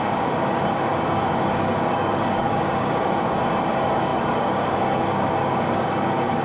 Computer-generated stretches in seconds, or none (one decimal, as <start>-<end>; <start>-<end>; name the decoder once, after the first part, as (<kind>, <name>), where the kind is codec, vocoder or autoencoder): 0.0-6.4 (codec, DAC)